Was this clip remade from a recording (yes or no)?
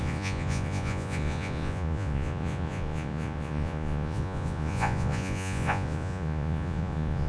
yes